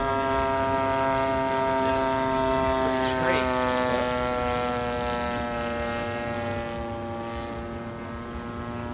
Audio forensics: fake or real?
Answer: real